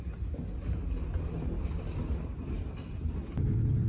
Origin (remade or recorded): recorded